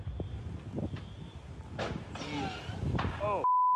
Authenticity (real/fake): real